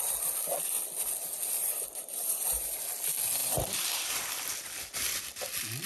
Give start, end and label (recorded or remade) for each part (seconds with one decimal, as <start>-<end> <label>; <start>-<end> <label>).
0.0-1.6 recorded; 1.6-2.8 remade; 2.8-3.4 recorded; 3.4-4.1 remade; 4.1-5.9 recorded